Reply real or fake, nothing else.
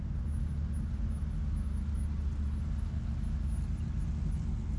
real